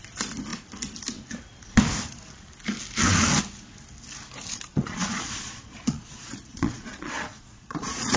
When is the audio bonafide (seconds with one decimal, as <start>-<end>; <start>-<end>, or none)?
0.0-4.7